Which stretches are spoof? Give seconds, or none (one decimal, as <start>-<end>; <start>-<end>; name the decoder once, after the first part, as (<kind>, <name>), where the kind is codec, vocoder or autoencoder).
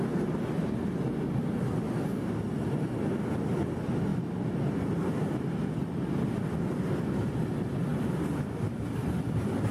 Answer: none